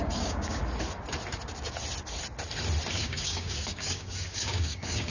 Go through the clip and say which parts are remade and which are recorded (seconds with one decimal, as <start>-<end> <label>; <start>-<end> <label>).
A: 0.0-0.6 remade; 0.6-2.9 recorded; 2.9-5.1 remade